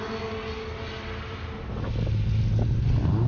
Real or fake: real